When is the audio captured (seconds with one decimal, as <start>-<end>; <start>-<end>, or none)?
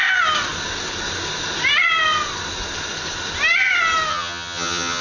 0.0-4.1